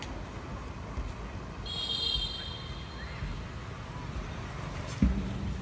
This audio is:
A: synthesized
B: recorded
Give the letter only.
B